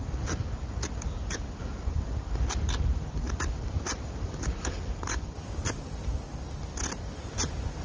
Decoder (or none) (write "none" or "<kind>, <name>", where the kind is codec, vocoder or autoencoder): none